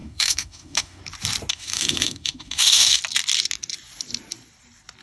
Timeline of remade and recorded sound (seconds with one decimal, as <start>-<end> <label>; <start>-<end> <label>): 0.0-1.0 remade; 1.0-1.5 recorded; 1.5-3.0 remade; 3.0-5.0 recorded